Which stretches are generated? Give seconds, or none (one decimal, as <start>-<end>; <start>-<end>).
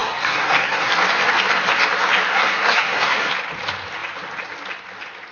0.0-0.9; 2.3-3.3